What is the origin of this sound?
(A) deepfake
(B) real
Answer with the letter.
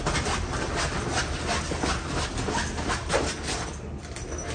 B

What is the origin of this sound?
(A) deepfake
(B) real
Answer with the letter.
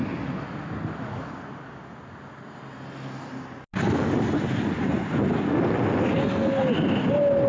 B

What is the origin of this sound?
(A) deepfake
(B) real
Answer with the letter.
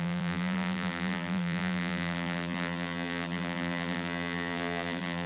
A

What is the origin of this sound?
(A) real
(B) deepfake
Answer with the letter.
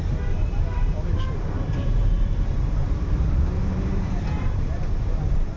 B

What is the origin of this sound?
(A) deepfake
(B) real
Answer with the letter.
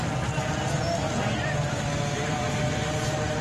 B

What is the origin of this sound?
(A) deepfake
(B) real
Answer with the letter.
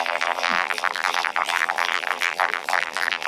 A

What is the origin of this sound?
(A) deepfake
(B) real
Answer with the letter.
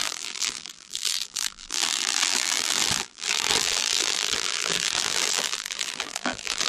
A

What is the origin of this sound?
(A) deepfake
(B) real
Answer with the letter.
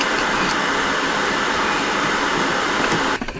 B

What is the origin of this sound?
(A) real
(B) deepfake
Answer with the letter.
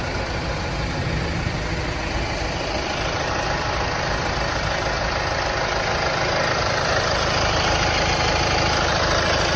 A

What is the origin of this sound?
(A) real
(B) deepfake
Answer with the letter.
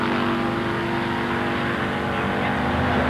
A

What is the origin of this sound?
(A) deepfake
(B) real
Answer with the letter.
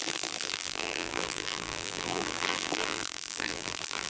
A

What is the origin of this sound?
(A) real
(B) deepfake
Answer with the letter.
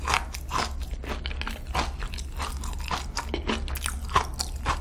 A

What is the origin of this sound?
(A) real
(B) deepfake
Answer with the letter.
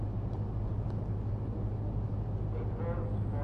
A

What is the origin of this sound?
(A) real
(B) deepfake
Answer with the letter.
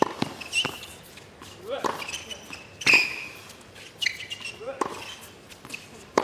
A